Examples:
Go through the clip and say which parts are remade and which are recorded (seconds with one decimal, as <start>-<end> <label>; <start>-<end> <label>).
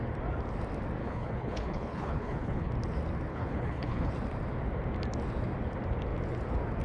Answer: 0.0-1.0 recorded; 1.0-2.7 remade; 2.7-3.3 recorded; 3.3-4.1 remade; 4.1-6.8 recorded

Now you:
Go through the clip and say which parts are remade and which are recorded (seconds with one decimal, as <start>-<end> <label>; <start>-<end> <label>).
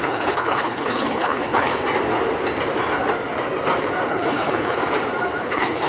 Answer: 0.0-1.7 remade; 1.7-4.1 recorded; 4.1-4.8 remade; 4.8-5.4 recorded; 5.4-5.9 remade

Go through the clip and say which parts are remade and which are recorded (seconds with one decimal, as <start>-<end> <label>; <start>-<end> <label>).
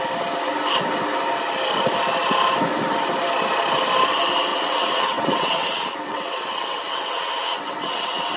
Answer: 0.0-4.5 recorded; 4.5-8.4 remade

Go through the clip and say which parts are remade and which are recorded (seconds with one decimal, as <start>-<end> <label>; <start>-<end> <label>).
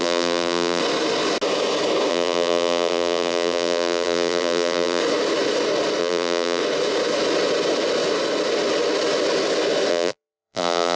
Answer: 0.0-0.8 remade; 0.8-2.1 recorded; 2.1-5.0 remade; 5.0-6.0 recorded; 6.0-6.6 remade; 6.6-9.9 recorded; 9.9-11.0 remade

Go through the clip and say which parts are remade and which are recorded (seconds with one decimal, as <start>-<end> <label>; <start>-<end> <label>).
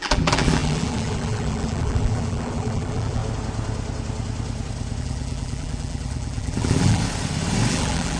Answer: 0.0-3.2 remade; 3.2-5.0 recorded; 5.0-7.0 remade; 7.0-7.7 recorded; 7.7-8.2 remade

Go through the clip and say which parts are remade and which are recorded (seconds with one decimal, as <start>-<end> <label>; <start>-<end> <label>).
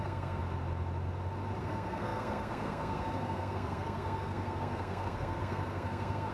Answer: 0.0-0.4 remade; 0.4-1.6 recorded; 1.6-6.3 remade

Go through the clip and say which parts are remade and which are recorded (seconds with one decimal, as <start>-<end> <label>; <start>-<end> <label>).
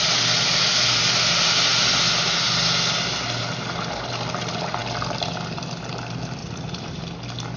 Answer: 0.0-6.4 recorded; 6.4-7.0 remade; 7.0-7.6 recorded